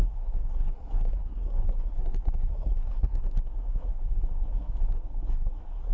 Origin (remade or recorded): remade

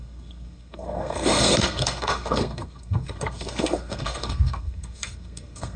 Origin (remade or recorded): remade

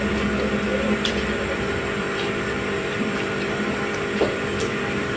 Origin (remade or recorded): remade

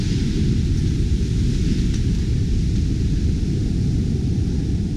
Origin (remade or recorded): recorded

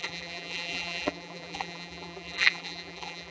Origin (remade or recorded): remade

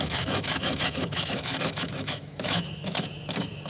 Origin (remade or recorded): remade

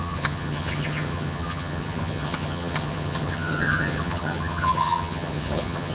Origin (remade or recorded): remade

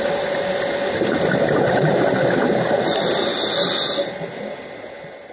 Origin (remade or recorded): recorded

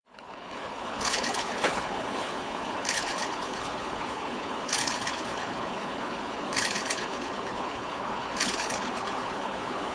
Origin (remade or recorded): remade